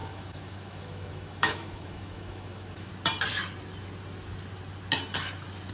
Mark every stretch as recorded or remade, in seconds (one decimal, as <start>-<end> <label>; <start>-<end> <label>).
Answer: 0.0-2.9 remade; 2.9-5.7 recorded